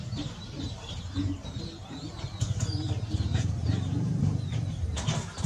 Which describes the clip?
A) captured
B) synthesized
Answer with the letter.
B